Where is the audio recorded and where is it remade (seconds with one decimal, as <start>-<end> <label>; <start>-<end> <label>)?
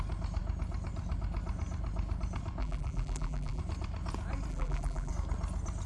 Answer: 0.0-2.6 recorded; 2.6-3.6 remade; 3.6-4.5 recorded; 4.5-5.1 remade; 5.1-5.9 recorded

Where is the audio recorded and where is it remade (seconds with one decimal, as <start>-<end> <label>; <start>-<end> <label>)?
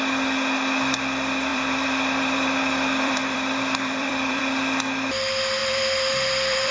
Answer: 0.0-1.5 recorded; 1.5-4.4 remade; 4.4-5.6 recorded; 5.6-6.7 remade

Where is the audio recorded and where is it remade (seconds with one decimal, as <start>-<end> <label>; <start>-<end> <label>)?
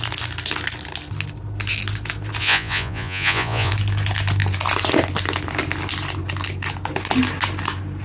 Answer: 0.0-2.4 recorded; 2.4-3.7 remade; 3.7-8.0 recorded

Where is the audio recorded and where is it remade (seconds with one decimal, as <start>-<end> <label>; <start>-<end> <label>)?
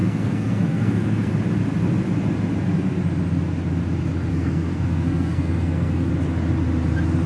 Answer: 0.0-1.3 remade; 1.3-4.3 recorded; 4.3-6.1 remade; 6.1-7.3 recorded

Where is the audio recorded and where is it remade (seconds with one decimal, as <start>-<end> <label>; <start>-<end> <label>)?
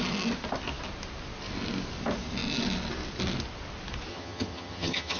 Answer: 0.0-4.1 recorded; 4.1-5.2 remade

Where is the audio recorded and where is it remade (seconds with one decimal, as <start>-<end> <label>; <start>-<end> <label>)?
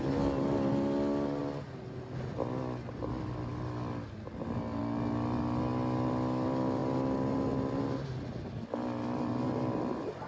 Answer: 0.0-10.3 recorded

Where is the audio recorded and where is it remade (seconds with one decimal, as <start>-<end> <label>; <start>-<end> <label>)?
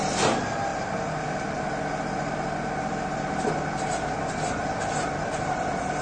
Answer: 0.0-6.0 recorded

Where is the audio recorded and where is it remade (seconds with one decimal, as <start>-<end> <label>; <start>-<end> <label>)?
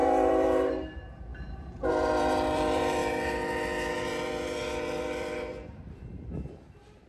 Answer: 0.0-3.0 remade; 3.0-3.9 recorded; 3.9-7.1 remade